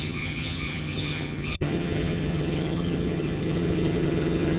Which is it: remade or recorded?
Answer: remade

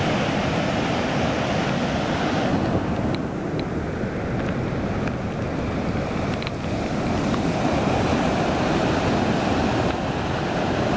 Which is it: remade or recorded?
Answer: recorded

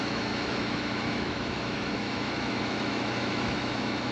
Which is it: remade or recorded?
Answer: remade